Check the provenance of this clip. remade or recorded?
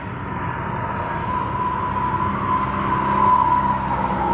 recorded